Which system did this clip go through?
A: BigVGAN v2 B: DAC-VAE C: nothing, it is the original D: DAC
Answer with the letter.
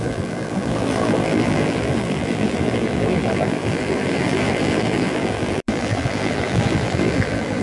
A